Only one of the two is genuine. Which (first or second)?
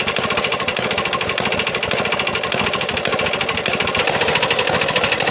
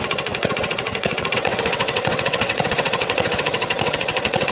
first